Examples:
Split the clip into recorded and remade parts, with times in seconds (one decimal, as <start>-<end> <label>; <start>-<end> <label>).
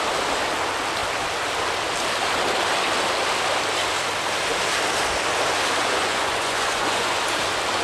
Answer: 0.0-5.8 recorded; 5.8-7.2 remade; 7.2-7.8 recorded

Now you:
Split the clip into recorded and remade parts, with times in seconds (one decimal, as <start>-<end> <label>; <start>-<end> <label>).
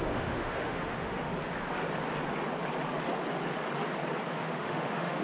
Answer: 0.0-1.3 remade; 1.3-4.3 recorded; 4.3-5.2 remade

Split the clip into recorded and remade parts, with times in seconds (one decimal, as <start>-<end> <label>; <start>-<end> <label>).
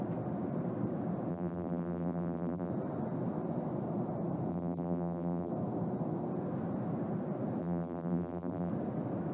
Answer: 0.0-1.3 recorded; 1.3-2.7 remade; 2.7-4.5 recorded; 4.5-5.5 remade; 5.5-7.6 recorded; 7.6-8.7 remade; 8.7-9.3 recorded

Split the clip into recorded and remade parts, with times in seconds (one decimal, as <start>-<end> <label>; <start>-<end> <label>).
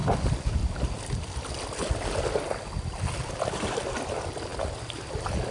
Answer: 0.0-5.5 recorded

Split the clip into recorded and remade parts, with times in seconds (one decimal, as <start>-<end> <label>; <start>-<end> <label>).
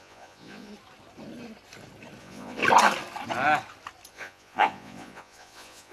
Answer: 0.0-0.7 remade; 0.7-2.2 recorded; 2.2-2.6 remade; 2.6-4.1 recorded; 4.1-5.9 remade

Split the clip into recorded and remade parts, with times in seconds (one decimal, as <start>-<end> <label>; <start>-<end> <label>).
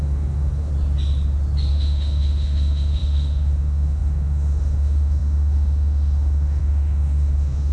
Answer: 0.0-0.7 remade; 0.7-1.7 recorded; 1.7-7.7 remade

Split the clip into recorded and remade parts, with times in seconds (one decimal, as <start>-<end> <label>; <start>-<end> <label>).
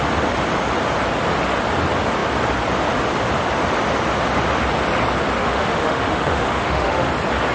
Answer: 0.0-5.4 recorded; 5.4-7.1 remade; 7.1-7.5 recorded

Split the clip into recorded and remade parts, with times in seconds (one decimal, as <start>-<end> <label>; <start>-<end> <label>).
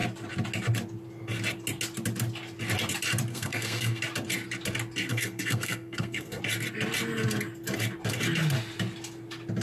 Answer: 0.0-3.3 recorded; 3.3-4.0 remade; 4.0-5.1 recorded; 5.1-6.4 remade; 6.4-9.6 recorded